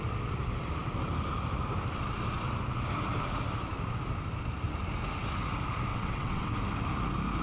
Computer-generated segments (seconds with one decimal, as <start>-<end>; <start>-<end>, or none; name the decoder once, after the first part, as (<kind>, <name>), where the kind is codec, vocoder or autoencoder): 5.9-6.5 (vocoder, WaveNeXt)